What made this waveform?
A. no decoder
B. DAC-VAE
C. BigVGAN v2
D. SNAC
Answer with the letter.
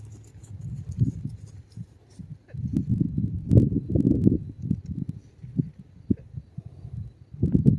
A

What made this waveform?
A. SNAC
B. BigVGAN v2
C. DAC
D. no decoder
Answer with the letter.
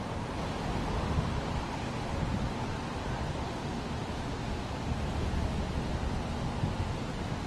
D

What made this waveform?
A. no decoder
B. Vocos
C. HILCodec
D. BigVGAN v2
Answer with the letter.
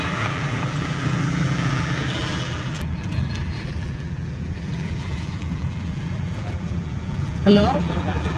D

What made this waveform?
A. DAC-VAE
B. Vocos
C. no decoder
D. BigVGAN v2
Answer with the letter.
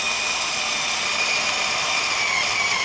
C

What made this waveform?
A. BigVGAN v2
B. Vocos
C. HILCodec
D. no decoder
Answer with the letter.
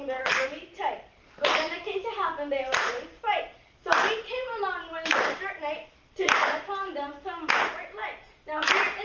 A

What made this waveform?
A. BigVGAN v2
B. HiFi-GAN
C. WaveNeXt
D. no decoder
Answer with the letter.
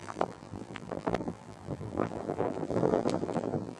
A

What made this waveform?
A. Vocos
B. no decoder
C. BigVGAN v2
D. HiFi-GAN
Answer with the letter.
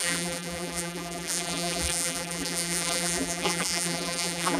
C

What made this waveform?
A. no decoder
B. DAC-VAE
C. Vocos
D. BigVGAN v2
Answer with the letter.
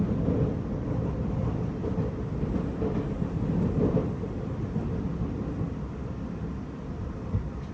A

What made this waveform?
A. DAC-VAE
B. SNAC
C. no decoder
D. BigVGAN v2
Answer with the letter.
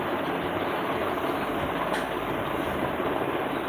D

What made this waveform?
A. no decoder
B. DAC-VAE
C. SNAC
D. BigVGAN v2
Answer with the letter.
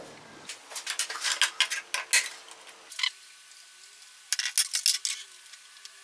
A